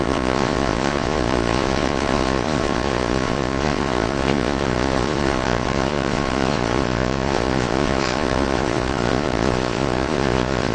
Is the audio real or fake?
fake